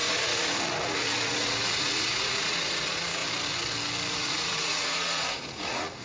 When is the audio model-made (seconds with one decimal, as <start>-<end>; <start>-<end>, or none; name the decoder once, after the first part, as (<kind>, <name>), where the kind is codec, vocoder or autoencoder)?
0.0-3.2 (vocoder, Vocos); 4.1-6.0